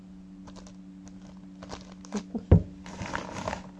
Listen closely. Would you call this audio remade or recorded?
recorded